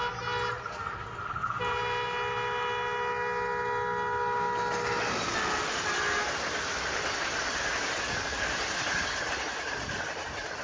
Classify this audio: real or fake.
real